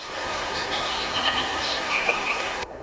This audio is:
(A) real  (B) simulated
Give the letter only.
B